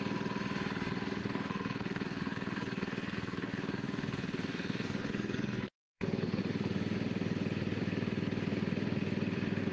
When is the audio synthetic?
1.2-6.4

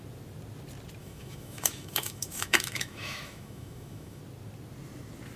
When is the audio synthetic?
1.0-4.2

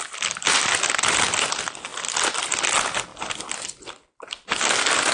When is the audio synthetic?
none

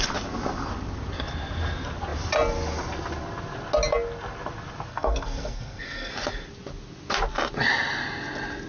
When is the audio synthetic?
4.9-6.1

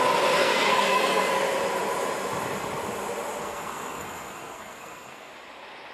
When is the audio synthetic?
0.4-1.3; 3.4-5.3

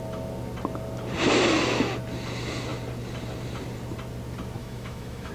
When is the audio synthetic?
4.6-5.3